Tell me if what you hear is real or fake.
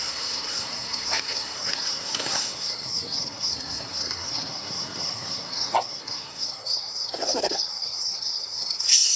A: fake